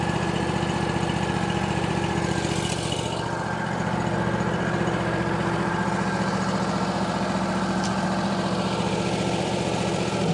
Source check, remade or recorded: remade